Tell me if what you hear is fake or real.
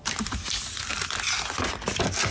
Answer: real